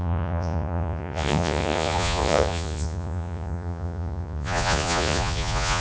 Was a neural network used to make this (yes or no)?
yes